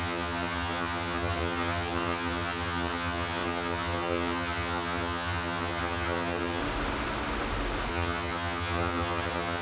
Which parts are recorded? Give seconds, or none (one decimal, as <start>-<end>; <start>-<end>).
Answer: 6.6-7.9